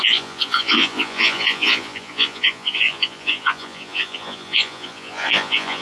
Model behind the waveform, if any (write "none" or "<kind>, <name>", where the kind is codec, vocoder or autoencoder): vocoder, Vocos